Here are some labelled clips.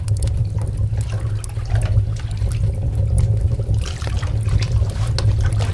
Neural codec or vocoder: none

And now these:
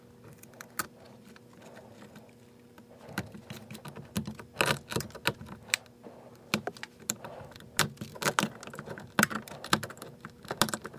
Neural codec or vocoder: none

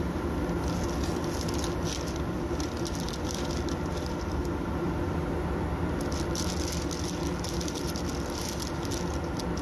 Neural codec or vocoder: none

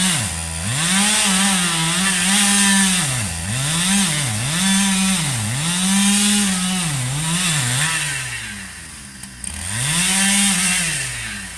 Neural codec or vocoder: none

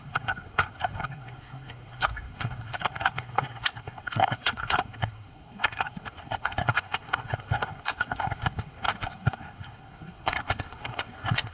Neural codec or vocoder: codec, SNAC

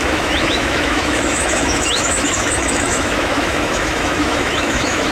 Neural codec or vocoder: autoencoder, DAC-VAE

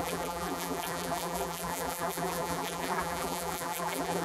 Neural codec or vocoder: vocoder, BigVGAN v2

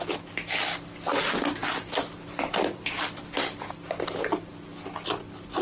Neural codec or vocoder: none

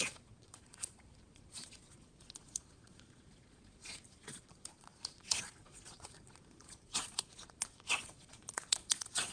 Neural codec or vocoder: vocoder, Vocos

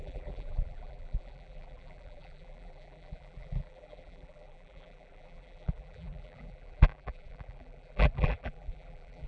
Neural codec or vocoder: vocoder, BigVGAN v2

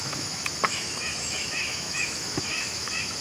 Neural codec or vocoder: autoencoder, DAC-VAE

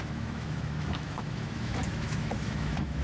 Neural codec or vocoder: autoencoder, DAC-VAE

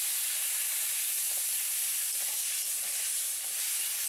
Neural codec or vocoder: none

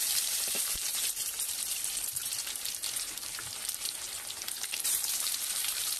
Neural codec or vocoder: vocoder, BigVGAN v2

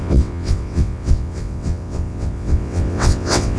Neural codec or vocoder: vocoder, WaveNeXt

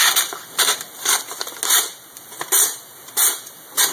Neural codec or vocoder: none